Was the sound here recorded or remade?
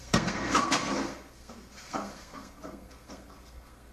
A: remade